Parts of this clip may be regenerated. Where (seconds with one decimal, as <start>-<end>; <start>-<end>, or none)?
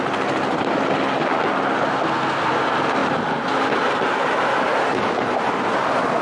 1.9-2.5